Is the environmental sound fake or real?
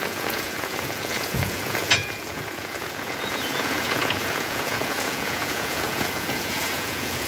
fake